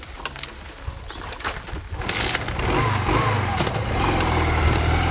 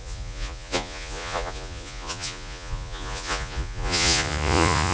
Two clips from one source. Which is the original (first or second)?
first